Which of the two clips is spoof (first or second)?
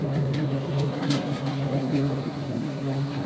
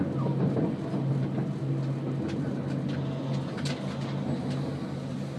first